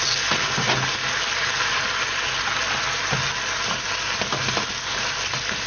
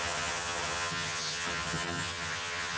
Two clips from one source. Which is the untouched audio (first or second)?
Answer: first